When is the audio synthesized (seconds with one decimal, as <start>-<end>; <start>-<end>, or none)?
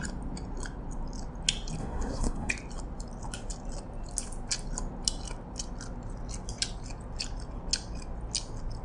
1.8-2.5